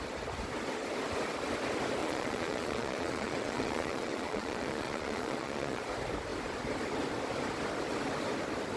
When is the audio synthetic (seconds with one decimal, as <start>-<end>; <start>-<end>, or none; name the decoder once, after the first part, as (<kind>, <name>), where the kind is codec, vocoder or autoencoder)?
2.0-5.8 (vocoder, Vocos)